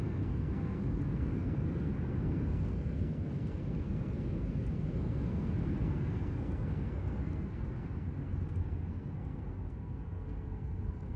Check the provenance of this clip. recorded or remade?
remade